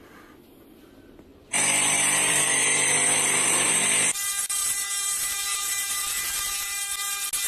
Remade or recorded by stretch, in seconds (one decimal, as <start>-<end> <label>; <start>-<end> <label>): 0.0-1.3 recorded; 1.3-4.1 remade; 4.1-4.6 recorded; 4.6-5.9 remade; 5.9-7.5 recorded